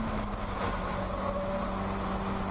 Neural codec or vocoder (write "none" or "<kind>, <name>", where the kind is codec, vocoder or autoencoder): none